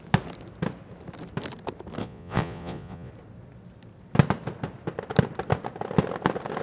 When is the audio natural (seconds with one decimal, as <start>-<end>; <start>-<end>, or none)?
0.0-2.0; 3.1-6.6